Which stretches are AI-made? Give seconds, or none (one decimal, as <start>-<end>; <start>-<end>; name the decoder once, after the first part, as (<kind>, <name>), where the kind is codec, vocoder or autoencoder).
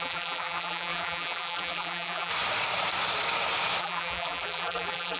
0.0-2.3 (vocoder, BigVGAN v2); 3.8-5.2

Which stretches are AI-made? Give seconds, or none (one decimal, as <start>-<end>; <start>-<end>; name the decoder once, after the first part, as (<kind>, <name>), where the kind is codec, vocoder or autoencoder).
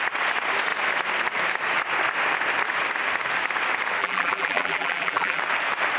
4.0-5.4 (vocoder, BigVGAN v2)